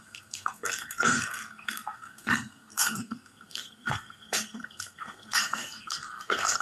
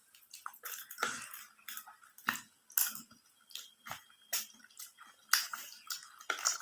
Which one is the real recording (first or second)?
second